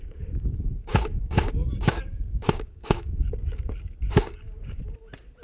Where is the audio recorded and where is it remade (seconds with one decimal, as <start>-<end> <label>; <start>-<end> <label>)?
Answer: 0.0-4.8 remade; 4.8-5.4 recorded

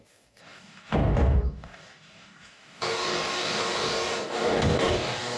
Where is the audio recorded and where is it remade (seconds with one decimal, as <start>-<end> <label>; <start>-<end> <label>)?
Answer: 0.0-5.4 remade

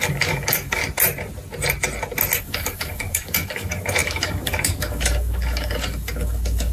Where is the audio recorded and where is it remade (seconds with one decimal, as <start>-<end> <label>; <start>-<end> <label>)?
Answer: 0.0-0.8 remade; 0.8-2.4 recorded; 2.4-6.7 remade

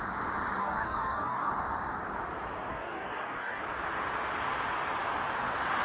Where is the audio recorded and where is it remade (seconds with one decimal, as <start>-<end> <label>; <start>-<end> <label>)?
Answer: 0.0-0.6 recorded; 0.6-1.5 remade; 1.5-2.7 recorded; 2.7-3.6 remade; 3.6-5.8 recorded

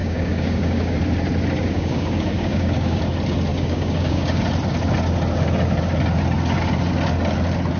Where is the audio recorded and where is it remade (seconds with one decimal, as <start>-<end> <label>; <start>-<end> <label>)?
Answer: 0.0-1.0 remade; 1.0-1.6 recorded; 1.6-3.0 remade; 3.0-3.5 recorded; 3.5-4.4 remade; 4.4-7.8 recorded

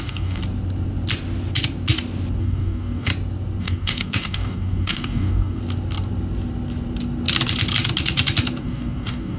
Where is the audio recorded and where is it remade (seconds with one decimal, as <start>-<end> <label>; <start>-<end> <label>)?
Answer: 0.0-0.4 remade; 0.4-2.4 recorded; 2.4-3.1 remade; 3.1-3.6 recorded; 3.6-5.6 remade; 5.6-8.6 recorded; 8.6-9.4 remade

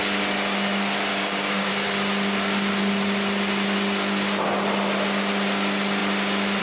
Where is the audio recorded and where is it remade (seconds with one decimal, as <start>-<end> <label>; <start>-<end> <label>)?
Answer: 0.0-1.1 recorded; 1.1-1.7 remade; 1.7-6.6 recorded